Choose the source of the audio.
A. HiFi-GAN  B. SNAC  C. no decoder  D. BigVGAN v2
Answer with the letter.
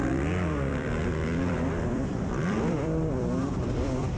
D